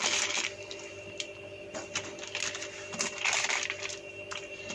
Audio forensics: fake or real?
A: fake